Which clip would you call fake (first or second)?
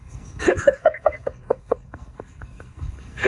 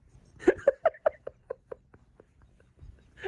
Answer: first